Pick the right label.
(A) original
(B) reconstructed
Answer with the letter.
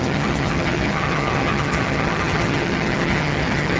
B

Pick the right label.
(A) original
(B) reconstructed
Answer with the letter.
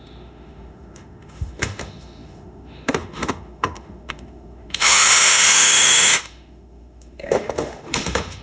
B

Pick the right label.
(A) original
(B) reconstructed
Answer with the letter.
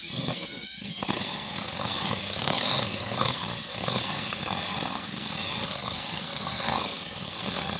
B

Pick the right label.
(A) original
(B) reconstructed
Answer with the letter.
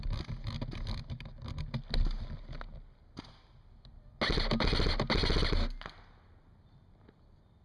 A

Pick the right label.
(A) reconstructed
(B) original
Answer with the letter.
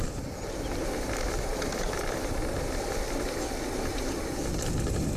B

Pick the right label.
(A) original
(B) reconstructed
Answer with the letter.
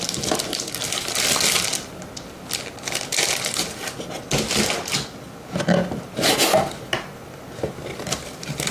A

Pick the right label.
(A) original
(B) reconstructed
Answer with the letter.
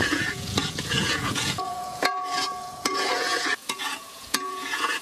B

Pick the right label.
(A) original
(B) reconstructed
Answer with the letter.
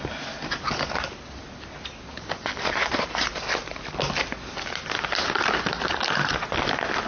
A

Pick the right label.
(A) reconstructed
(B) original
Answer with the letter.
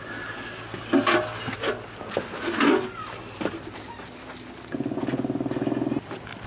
B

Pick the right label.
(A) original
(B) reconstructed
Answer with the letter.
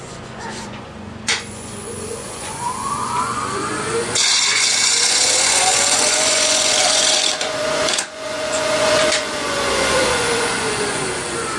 B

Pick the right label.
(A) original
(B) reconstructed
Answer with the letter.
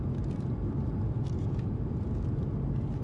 A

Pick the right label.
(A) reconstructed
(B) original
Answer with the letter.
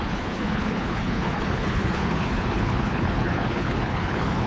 A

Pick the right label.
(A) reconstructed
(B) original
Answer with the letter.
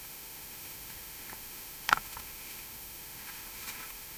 A